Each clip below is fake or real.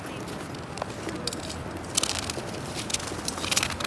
real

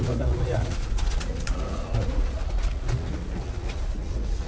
fake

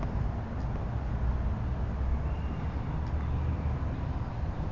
real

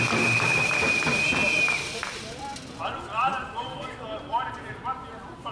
real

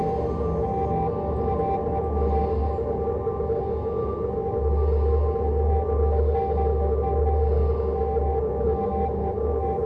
real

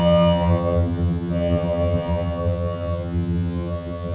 fake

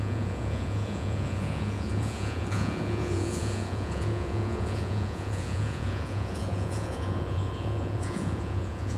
fake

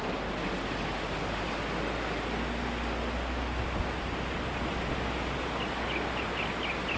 real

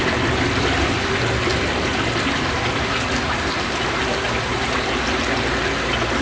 real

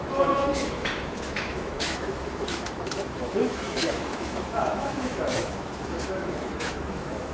fake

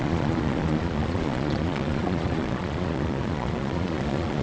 fake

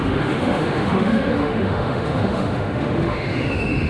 fake